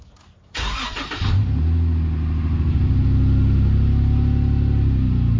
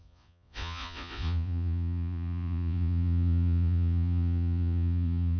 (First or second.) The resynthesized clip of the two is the second